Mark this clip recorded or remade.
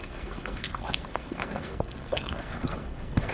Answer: remade